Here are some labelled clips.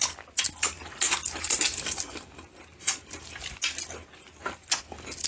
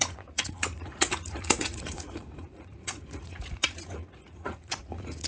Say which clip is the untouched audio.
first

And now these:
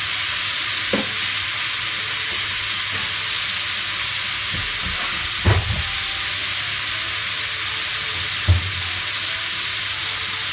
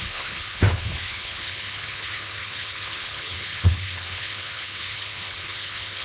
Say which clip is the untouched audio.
first